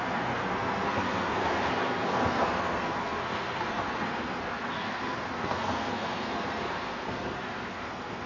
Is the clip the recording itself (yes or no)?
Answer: no